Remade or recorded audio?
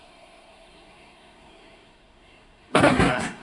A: remade